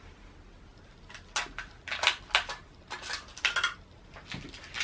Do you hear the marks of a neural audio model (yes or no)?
no